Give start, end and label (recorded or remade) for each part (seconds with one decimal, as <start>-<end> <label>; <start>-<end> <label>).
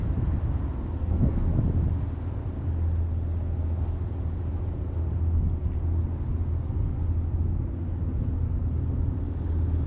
0.0-1.0 recorded; 1.0-1.6 remade; 1.6-9.9 recorded